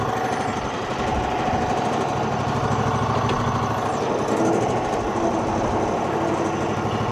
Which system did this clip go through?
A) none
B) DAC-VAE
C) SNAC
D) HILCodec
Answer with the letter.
A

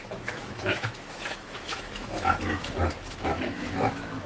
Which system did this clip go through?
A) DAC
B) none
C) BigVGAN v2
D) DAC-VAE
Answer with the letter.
D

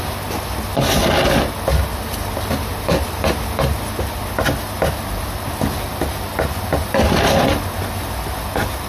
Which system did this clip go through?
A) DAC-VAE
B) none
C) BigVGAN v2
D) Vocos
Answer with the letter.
B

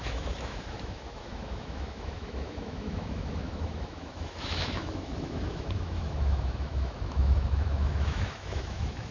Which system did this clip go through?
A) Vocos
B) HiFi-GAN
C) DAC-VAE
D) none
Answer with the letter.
C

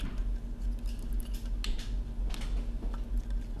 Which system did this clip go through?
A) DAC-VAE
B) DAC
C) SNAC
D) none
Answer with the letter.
D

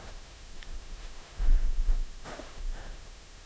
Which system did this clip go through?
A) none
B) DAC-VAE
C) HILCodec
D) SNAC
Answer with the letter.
B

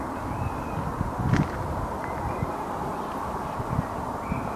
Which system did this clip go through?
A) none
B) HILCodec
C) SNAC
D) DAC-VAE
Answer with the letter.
A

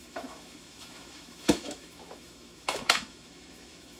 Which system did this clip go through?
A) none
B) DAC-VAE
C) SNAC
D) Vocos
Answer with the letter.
B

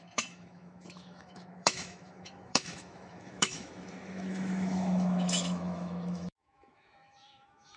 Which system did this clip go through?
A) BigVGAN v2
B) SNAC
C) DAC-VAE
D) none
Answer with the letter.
C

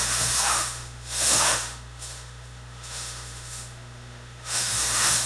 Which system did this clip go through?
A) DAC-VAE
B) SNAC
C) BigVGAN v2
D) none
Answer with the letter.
A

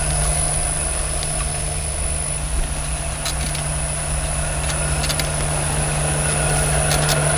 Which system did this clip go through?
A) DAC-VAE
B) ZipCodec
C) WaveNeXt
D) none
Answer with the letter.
D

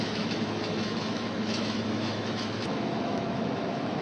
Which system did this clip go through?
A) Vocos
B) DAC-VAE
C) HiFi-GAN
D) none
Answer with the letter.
B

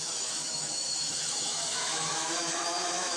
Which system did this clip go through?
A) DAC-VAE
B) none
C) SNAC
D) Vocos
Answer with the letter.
A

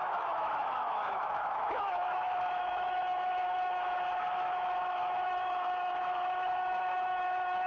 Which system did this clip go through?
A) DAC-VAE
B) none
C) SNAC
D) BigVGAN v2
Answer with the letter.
A